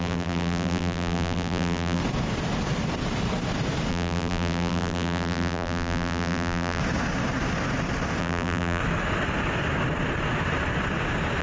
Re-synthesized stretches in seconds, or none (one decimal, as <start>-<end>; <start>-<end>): 0.0-2.0; 3.9-6.8; 8.2-8.8